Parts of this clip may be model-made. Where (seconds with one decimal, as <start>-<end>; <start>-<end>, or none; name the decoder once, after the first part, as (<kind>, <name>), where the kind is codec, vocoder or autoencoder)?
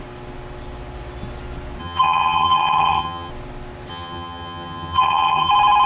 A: 1.8-3.3 (vocoder, HiFi-GAN); 3.9-5.5